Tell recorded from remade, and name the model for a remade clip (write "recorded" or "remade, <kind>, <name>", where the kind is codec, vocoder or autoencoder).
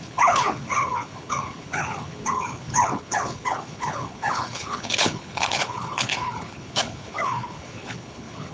remade, codec, HILCodec